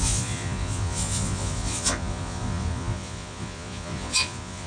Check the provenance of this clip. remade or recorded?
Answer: remade